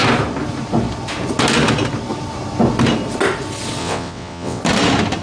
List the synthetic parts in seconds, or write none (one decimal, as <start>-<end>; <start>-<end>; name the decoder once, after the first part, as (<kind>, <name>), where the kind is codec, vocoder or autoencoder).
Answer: 3.8-4.6 (vocoder, WaveNeXt)